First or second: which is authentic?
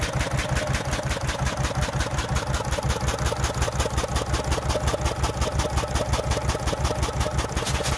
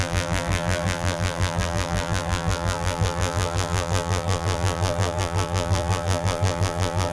first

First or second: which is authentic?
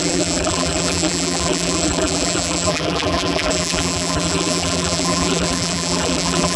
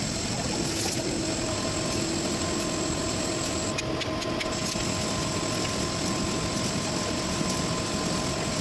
second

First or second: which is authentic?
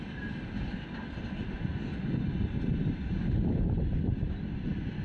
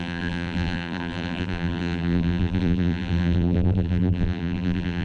first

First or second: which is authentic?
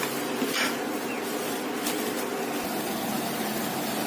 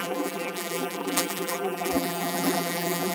first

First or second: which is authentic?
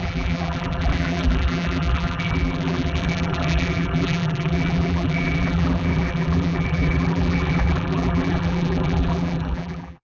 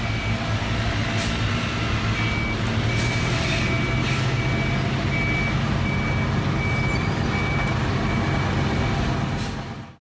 second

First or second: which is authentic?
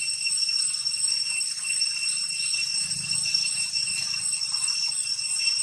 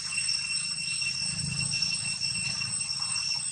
second